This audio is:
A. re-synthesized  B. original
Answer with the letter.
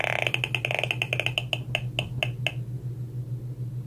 B